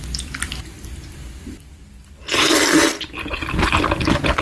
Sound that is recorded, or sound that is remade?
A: recorded